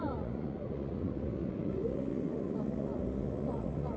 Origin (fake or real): fake